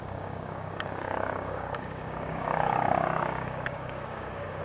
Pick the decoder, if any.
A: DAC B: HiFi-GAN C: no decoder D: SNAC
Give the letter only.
A